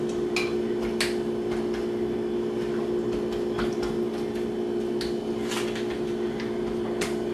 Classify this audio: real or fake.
real